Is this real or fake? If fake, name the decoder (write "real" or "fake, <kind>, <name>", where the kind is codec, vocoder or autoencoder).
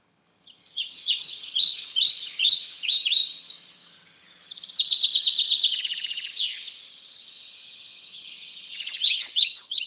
fake, vocoder, HiFi-GAN